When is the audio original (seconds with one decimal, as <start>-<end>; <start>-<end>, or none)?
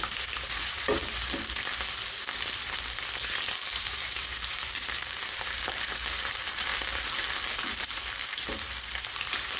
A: 1.0-3.6; 6.7-7.4